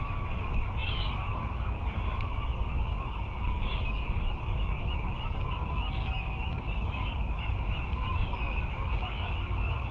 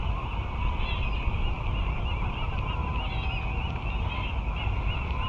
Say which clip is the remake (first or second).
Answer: first